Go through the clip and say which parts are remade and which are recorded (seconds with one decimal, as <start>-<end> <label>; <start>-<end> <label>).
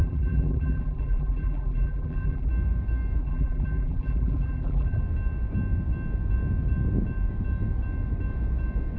0.0-2.5 remade; 2.5-3.2 recorded; 3.2-5.0 remade; 5.0-9.0 recorded